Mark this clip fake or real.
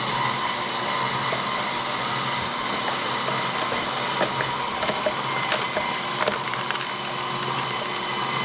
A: real